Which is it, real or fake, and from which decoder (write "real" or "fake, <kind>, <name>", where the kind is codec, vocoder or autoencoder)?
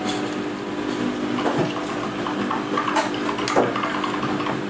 real